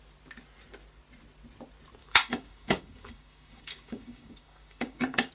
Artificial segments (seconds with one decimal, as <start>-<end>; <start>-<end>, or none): 2.0-5.3